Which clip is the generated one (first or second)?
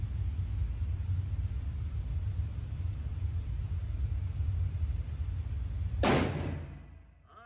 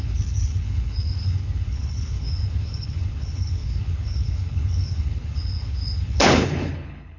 second